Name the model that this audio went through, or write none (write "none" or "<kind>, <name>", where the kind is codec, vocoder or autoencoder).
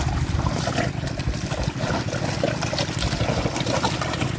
none